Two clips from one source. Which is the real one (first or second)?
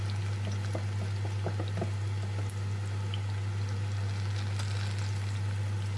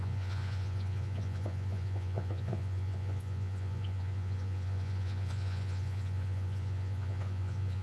first